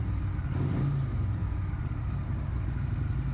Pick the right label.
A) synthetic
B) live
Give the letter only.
B